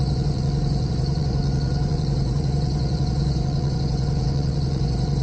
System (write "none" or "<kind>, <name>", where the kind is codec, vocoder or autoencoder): vocoder, Vocos